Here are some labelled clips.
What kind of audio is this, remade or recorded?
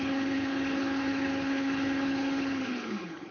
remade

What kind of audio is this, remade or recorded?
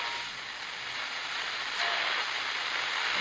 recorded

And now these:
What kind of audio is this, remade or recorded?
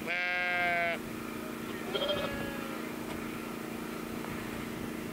recorded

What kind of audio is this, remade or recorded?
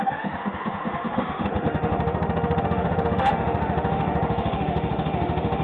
remade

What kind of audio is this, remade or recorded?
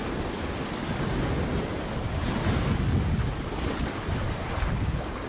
recorded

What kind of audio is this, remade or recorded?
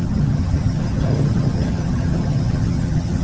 remade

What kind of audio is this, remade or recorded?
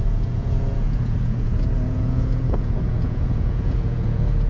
remade